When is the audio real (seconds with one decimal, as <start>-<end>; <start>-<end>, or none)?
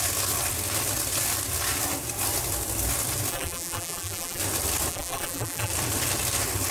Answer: 0.0-3.3; 4.4-4.9; 5.7-6.7